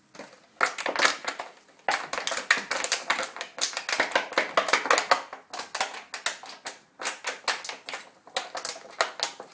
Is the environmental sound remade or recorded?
recorded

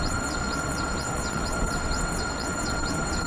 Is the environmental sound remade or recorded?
remade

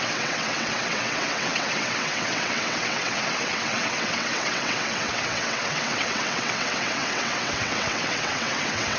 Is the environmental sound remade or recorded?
remade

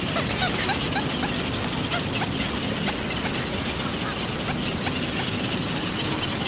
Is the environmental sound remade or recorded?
recorded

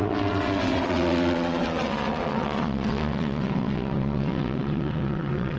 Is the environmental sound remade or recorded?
remade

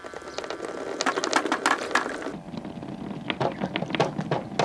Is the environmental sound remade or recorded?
recorded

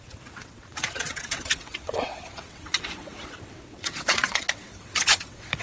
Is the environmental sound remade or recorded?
remade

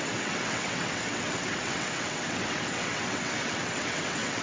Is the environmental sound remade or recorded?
remade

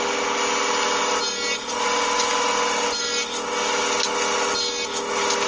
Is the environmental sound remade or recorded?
recorded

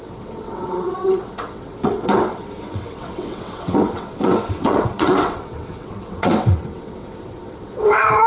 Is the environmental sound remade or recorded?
remade